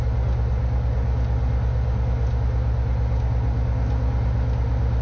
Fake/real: real